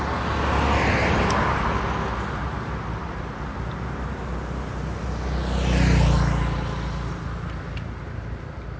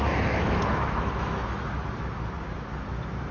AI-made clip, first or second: second